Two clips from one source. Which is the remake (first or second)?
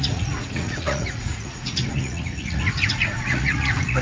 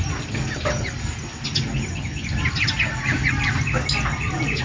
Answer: first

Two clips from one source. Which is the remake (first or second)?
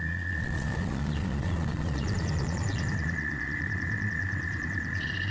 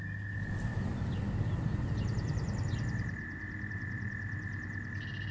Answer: first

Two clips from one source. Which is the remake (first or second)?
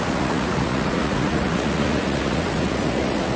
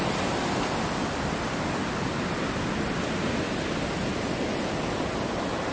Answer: first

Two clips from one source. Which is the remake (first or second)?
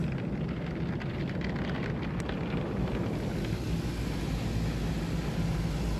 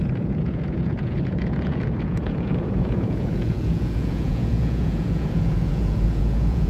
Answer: second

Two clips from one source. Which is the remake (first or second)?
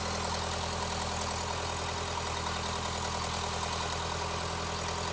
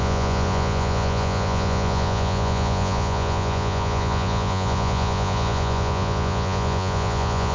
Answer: second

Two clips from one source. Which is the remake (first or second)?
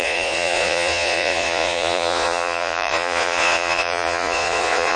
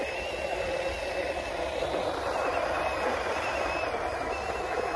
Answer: first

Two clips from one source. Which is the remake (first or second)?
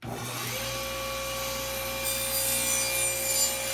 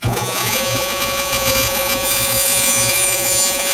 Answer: second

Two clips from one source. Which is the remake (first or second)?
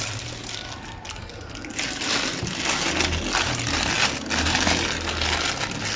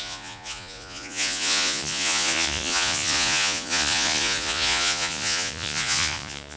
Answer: second